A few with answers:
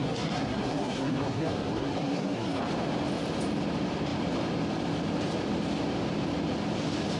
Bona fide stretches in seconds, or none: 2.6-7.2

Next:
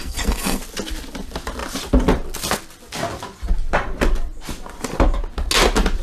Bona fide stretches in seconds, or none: 0.6-6.0

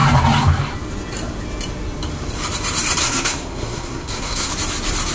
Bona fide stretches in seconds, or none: 0.0-3.0; 4.5-5.1

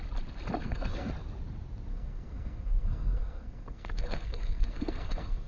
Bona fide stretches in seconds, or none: 0.0-0.6; 1.1-1.9

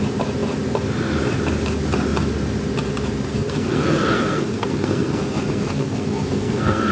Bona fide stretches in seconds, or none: 0.0-3.3